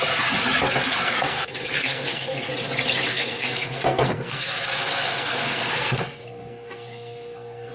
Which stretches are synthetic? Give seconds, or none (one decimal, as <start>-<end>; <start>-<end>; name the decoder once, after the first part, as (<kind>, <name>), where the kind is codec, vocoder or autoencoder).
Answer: 0.9-2.5 (codec, SNAC); 3.1-7.7